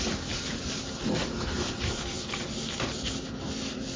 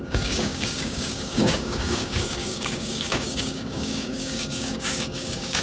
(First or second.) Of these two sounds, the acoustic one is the first